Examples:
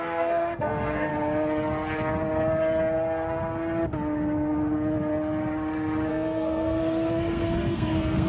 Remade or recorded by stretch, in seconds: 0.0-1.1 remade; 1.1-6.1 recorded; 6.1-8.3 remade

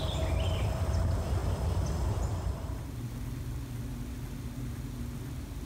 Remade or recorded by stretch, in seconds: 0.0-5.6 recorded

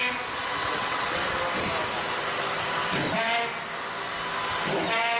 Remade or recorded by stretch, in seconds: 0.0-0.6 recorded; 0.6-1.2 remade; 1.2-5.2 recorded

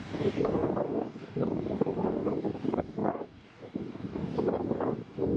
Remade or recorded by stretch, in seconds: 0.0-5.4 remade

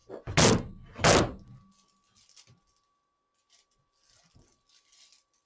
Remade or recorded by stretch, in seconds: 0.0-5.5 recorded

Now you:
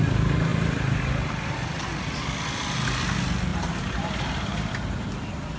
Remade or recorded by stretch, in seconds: 0.0-3.5 recorded; 3.5-4.7 remade; 4.7-5.6 recorded

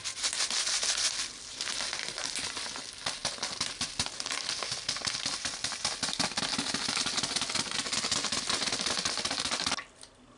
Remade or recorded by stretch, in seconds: 0.0-10.4 recorded